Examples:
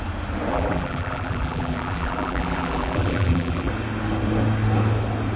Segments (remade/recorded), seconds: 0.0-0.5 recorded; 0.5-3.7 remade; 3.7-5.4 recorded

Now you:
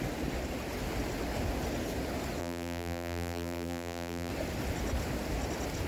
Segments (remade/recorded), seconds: 0.0-2.4 recorded; 2.4-4.3 remade; 4.3-5.9 recorded

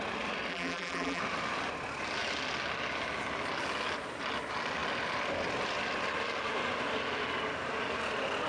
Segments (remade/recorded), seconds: 0.0-0.5 recorded; 0.5-1.2 remade; 1.2-8.5 recorded